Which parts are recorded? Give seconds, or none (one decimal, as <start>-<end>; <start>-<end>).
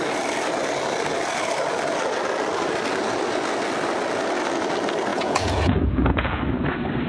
0.0-5.1; 6.4-7.1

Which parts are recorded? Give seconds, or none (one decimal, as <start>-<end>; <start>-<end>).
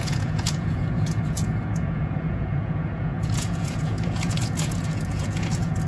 none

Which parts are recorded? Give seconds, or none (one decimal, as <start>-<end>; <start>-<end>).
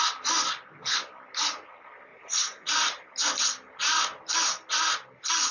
0.0-2.1; 2.7-5.5